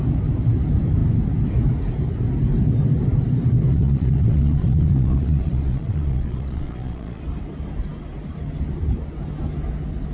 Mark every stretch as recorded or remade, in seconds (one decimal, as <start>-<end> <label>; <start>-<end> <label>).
0.0-3.7 recorded; 3.7-7.2 remade; 7.2-10.1 recorded